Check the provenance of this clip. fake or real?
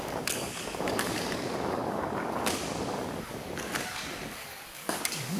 fake